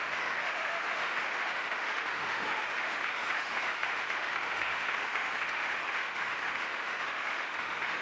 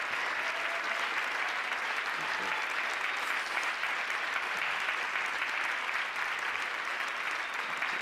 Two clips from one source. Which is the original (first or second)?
second